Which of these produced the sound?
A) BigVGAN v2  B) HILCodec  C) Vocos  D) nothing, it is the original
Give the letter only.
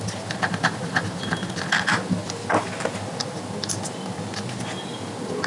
D